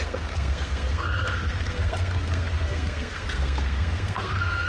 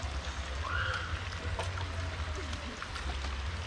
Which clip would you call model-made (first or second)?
first